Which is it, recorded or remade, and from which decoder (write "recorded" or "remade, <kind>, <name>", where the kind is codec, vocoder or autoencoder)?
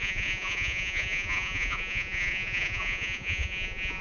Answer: remade, vocoder, Vocos